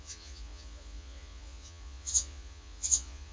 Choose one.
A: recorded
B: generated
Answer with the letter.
B